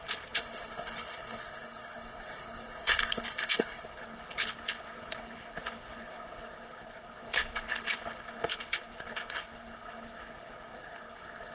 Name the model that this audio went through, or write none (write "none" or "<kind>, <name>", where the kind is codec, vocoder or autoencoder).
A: codec, HILCodec